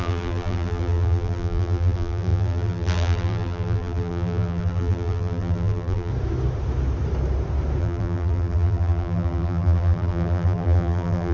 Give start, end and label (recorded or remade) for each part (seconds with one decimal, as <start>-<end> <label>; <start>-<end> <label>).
0.0-6.1 remade; 6.1-7.8 recorded; 7.8-11.3 remade